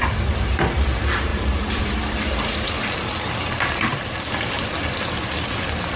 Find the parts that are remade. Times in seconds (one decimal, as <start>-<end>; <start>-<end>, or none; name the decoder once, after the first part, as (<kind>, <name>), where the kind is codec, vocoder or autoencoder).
1.3-2.7 (vocoder, BigVGAN v2)

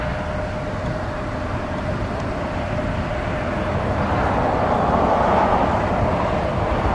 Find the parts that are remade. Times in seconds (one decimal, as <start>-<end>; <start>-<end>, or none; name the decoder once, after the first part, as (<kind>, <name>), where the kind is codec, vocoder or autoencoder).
0.8-2.3 (vocoder, BigVGAN v2); 3.7-4.4

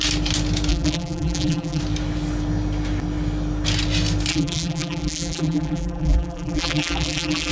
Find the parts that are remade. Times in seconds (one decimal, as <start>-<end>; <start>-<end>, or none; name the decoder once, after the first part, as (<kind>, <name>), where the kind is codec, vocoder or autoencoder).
0.7-1.8 (vocoder, BigVGAN v2); 4.3-7.5

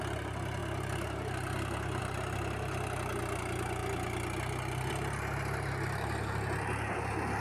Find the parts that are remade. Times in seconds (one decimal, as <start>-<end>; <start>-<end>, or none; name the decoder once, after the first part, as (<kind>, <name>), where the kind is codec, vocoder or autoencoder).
none

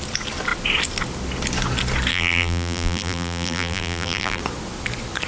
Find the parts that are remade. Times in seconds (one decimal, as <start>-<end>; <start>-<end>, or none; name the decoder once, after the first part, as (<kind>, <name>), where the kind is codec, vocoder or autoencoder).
2.1-4.4 (vocoder, BigVGAN v2)

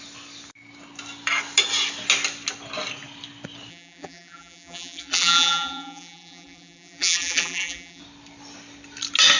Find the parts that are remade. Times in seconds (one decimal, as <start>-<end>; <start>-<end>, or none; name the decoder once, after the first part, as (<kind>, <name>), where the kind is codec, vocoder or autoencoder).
3.7-8.0 (vocoder, BigVGAN v2)

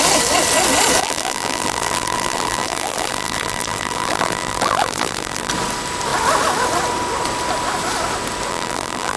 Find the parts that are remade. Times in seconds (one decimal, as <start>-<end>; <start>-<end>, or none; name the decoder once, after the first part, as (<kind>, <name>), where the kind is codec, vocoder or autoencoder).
1.0-5.5 (vocoder, BigVGAN v2); 8.5-9.2